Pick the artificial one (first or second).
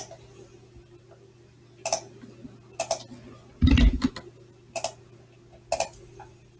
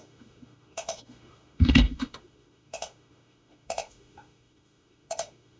second